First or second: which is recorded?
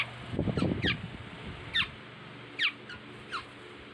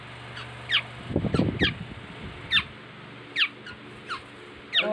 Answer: second